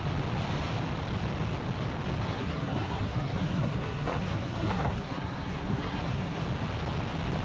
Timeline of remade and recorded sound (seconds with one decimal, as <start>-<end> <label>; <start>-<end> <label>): 0.0-2.3 recorded; 2.3-6.4 remade; 6.4-7.4 recorded